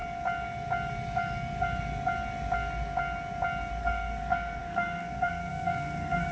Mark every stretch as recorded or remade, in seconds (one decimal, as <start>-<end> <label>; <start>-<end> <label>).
0.0-3.8 recorded; 3.8-6.3 remade